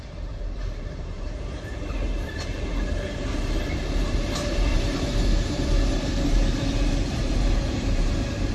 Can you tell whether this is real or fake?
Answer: fake